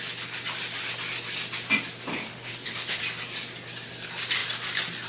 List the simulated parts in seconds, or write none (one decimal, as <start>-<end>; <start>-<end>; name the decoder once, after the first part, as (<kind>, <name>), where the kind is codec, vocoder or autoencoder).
2.1-3.0 (codec, HILCodec)

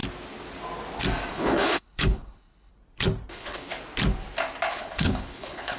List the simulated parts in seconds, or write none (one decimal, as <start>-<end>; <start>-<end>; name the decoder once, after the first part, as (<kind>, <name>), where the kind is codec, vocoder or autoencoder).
1.3-2.7 (codec, HILCodec); 3.3-3.7; 4.7-5.8